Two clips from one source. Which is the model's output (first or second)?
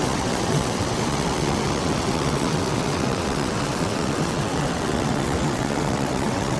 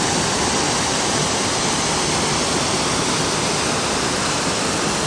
first